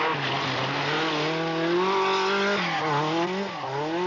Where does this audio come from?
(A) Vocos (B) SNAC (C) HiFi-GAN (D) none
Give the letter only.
D